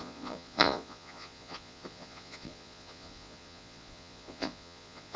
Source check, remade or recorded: remade